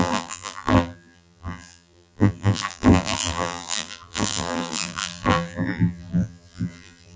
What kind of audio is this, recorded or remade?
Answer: remade